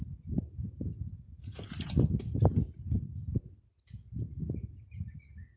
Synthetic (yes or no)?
no